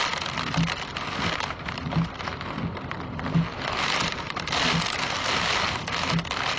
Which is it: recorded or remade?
recorded